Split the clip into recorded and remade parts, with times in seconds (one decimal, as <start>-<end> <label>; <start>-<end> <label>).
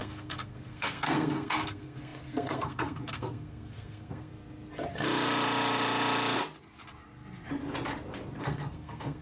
0.0-4.3 remade; 4.3-8.4 recorded; 8.4-9.2 remade